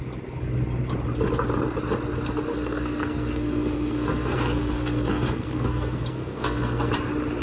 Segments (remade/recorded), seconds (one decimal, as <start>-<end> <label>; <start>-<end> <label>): 0.0-2.5 recorded; 2.5-6.9 remade; 6.9-7.4 recorded

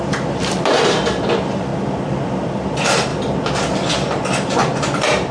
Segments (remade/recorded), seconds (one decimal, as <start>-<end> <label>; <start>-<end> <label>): 0.0-5.3 recorded

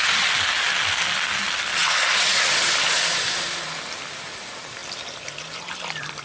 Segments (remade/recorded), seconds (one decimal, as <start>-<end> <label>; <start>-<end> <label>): 0.0-6.2 recorded

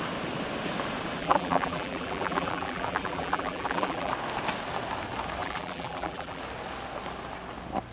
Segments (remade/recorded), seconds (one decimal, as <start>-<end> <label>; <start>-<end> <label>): 0.0-1.2 recorded; 1.2-4.1 remade; 4.1-5.4 recorded; 5.4-6.4 remade; 6.4-7.9 recorded

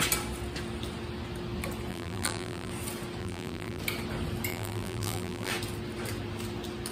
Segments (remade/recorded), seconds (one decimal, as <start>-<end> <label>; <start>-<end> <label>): 0.0-1.9 recorded; 1.9-2.7 remade; 2.7-3.2 recorded; 3.2-3.8 remade; 3.8-4.5 recorded; 4.5-5.5 remade; 5.5-6.9 recorded

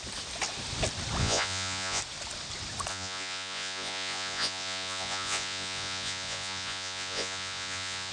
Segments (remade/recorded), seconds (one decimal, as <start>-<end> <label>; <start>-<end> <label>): 0.0-1.2 recorded; 1.2-2.0 remade; 2.0-2.9 recorded; 2.9-8.1 remade